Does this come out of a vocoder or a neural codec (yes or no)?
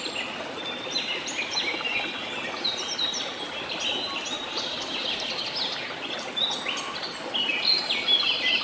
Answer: no